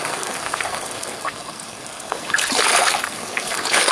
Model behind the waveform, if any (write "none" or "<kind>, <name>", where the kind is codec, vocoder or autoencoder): codec, SNAC